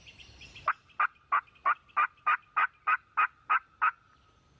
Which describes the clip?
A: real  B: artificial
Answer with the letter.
A